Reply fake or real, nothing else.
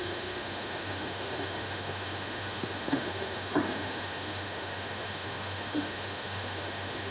fake